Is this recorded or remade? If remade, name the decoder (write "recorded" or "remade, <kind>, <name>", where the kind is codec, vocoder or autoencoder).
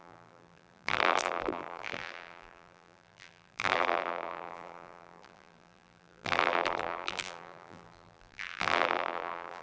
remade, vocoder, BigVGAN v2